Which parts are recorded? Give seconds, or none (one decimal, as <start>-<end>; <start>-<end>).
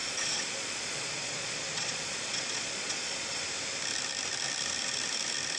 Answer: 3.4-5.6